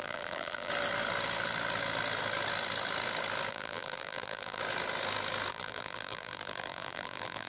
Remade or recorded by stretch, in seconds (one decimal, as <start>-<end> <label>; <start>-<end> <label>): 0.0-0.7 remade; 0.7-3.5 recorded; 3.5-4.6 remade; 4.6-5.5 recorded; 5.5-7.5 remade